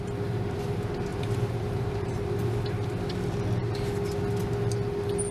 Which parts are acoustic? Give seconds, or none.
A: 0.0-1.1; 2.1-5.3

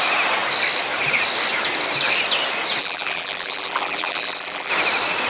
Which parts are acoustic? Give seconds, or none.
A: 0.0-2.8; 4.7-5.3

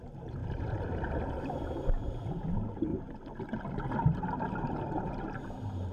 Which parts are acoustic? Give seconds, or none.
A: 0.4-1.5; 2.9-4.5

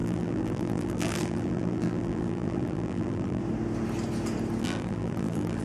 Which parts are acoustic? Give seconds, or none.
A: 3.4-4.6

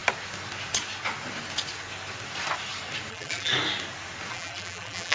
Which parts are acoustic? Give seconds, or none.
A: 0.0-3.1; 3.5-4.3

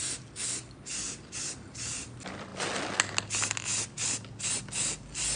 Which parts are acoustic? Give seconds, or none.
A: 0.0-5.4

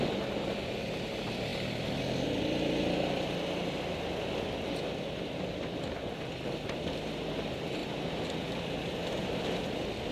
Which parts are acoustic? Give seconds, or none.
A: 0.0-7.8; 8.6-9.0; 9.7-10.1

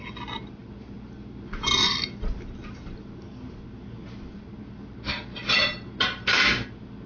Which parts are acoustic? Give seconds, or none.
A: 0.0-7.1